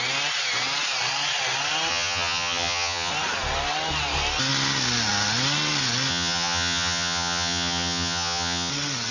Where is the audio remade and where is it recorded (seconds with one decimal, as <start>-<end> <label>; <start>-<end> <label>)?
0.0-1.9 recorded; 1.9-3.1 remade; 3.1-6.1 recorded; 6.1-8.7 remade; 8.7-9.1 recorded